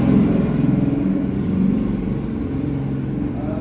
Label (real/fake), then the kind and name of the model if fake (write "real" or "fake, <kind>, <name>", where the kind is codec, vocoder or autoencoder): real